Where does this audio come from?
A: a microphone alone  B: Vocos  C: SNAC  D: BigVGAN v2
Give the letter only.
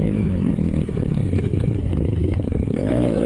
C